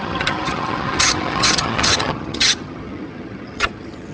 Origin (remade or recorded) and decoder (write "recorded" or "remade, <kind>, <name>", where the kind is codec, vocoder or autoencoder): remade, vocoder, HiFi-GAN